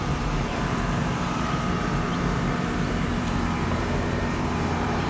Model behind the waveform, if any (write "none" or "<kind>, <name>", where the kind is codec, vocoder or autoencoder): vocoder, BigVGAN v2